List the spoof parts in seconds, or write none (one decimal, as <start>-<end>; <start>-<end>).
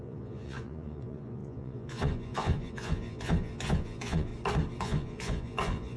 0.0-4.3; 4.8-6.0